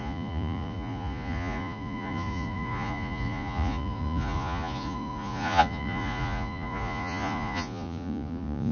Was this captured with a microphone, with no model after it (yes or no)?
no